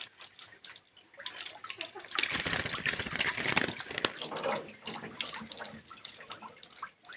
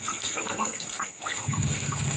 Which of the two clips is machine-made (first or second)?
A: second